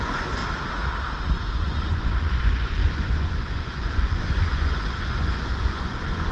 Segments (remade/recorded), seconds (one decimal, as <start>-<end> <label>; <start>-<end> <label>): 0.0-0.4 remade; 0.4-1.2 recorded; 1.2-6.3 remade